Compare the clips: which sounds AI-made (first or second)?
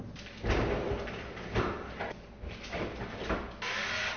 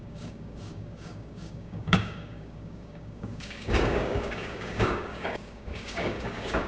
second